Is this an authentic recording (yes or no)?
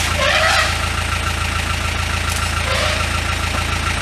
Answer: yes